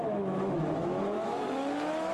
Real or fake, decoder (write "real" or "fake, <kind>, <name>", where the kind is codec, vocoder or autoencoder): fake, autoencoder, DAC-VAE